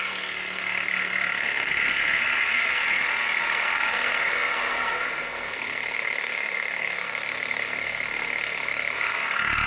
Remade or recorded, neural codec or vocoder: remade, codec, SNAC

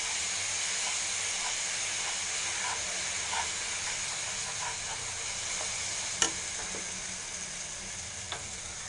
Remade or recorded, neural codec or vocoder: recorded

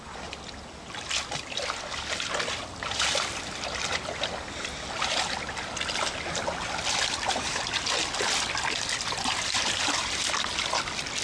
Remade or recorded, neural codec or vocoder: recorded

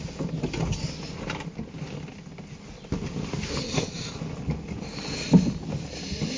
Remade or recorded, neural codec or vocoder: recorded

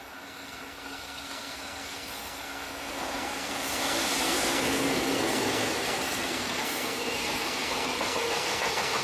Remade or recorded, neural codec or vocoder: remade, codec, SNAC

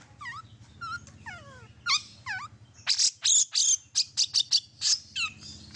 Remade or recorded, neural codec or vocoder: recorded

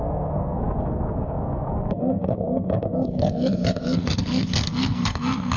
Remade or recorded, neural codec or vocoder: remade, codec, SNAC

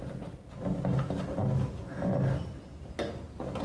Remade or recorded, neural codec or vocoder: recorded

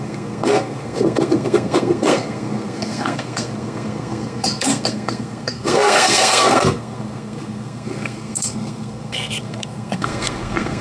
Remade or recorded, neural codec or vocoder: remade, codec, SNAC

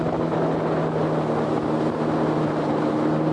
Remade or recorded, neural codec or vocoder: recorded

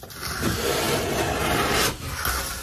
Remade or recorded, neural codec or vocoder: recorded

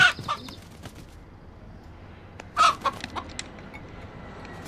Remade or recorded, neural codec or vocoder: recorded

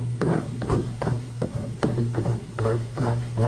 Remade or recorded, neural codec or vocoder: remade, codec, SNAC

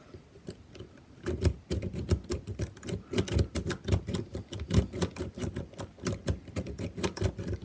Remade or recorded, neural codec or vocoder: recorded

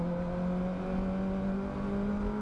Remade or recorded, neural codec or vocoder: recorded